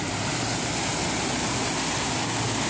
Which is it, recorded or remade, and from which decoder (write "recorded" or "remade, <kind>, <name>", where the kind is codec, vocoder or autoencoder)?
recorded